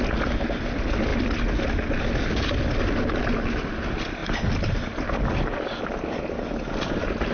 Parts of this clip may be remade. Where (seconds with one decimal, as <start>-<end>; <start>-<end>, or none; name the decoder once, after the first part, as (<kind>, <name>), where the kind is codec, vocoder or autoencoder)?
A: none